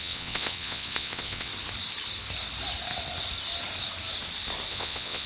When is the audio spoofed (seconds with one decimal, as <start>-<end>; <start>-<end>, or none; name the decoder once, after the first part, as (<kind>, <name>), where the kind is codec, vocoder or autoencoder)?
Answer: 0.0-1.5 (vocoder, WaveNeXt); 4.7-5.3